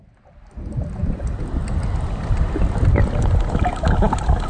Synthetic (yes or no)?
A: no